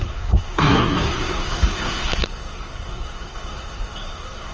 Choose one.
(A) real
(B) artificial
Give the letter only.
B